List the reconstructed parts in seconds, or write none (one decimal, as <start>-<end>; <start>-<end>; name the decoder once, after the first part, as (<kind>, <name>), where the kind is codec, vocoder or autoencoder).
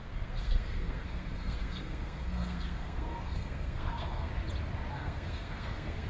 0.0-4.3 (codec, SNAC); 4.9-6.1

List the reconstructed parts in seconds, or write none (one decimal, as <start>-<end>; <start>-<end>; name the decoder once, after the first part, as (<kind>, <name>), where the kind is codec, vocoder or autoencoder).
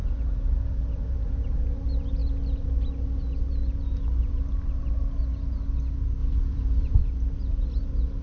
0.0-1.3 (vocoder, Vocos); 6.2-7.0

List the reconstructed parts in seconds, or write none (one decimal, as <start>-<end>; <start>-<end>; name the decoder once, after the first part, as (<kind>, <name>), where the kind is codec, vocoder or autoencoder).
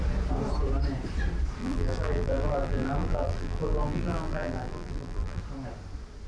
1.6-5.4 (vocoder, BigVGAN v2)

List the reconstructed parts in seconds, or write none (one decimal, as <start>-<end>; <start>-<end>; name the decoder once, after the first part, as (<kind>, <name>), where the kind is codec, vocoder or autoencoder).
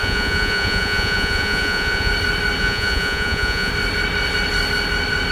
0.0-2.1 (vocoder, Vocos); 2.6-3.7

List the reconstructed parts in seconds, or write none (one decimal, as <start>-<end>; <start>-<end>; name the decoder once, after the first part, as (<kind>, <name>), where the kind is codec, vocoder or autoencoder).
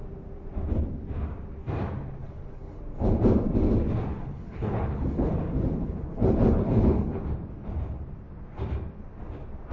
2.2-2.8 (codec, HILCodec); 4.1-5.3; 5.8-7.2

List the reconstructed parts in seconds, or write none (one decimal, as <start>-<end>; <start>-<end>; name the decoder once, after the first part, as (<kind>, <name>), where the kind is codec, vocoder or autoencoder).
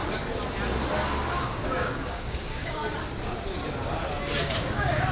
1.4-2.8 (codec, DAC); 4.4-5.1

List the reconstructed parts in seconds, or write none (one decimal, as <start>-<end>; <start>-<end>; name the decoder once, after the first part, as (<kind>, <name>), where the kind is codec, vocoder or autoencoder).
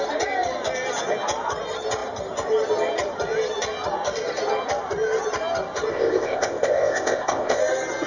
5.9-7.6 (codec, ZipCodec)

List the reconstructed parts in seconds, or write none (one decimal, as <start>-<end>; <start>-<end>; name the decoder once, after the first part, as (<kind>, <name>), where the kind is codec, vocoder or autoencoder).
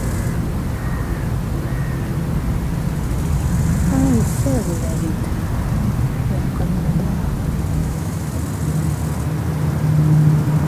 7.8-8.3 (autoencoder, DAC-VAE)